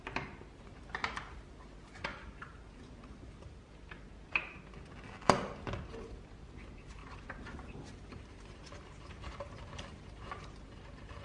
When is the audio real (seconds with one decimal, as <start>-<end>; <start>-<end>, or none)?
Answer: 0.0-2.1; 3.7-7.0; 10.6-11.2